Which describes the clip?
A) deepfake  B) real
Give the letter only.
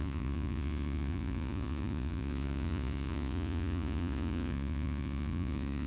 A